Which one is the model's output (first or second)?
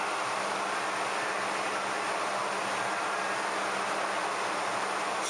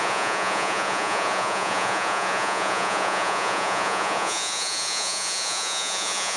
second